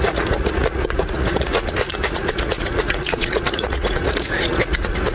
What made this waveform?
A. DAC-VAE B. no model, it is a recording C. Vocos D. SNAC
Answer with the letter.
C